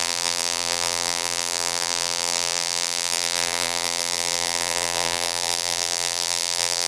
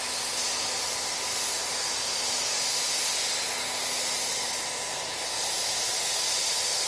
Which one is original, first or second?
second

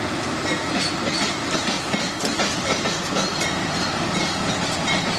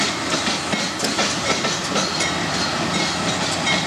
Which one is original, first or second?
second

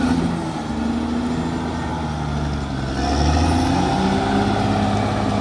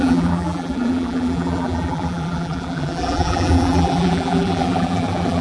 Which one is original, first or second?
first